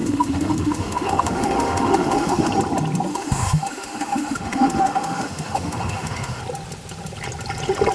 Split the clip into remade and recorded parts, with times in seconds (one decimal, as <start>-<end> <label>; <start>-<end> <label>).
0.0-2.5 remade; 2.5-3.1 recorded; 3.1-6.4 remade; 6.4-7.9 recorded